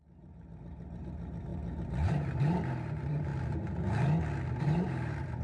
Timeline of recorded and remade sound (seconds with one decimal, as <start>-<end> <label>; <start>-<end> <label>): 0.0-3.3 remade; 3.3-4.6 recorded; 4.6-5.4 remade